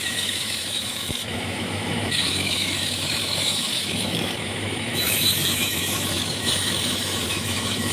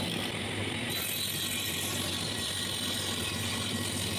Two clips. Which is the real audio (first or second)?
second